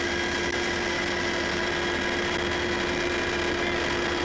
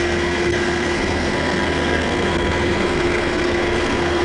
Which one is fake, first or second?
second